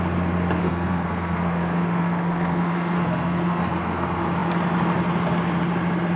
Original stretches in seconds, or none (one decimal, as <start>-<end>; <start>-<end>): 0.0-0.6; 3.6-6.2